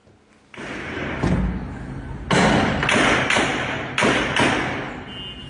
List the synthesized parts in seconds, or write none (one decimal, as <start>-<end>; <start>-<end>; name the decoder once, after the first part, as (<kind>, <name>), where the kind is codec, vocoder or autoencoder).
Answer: none